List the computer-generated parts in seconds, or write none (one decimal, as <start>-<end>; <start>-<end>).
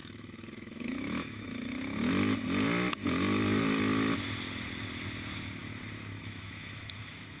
0.0-2.1; 5.6-7.4